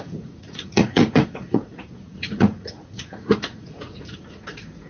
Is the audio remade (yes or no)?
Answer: yes